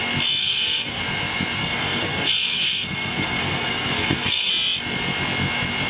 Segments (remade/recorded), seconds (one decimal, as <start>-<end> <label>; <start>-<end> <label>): 0.0-0.4 recorded; 0.4-1.0 remade; 1.0-1.6 recorded; 1.6-4.5 remade; 4.5-5.9 recorded